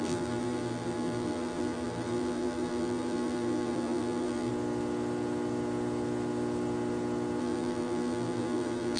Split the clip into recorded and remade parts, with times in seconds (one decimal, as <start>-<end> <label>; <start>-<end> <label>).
0.0-4.5 remade; 4.5-7.4 recorded; 7.4-9.0 remade